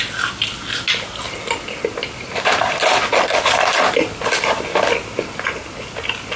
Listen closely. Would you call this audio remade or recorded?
recorded